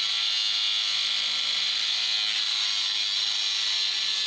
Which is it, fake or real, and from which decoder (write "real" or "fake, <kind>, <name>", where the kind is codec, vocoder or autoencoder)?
real